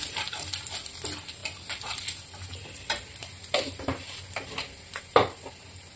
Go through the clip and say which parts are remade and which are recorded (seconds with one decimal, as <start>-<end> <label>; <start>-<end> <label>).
0.0-6.0 recorded